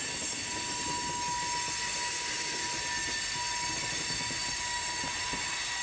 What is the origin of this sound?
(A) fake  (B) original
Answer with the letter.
B